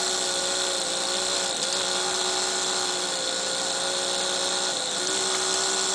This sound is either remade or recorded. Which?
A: recorded